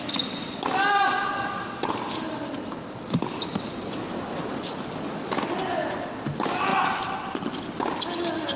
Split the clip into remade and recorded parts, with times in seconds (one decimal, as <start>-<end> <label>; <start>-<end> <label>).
0.0-8.6 recorded